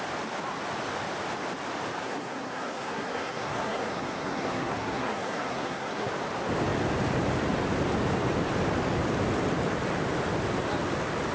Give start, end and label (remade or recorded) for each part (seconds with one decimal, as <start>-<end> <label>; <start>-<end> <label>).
0.0-2.0 recorded; 2.0-6.1 remade; 6.1-11.3 recorded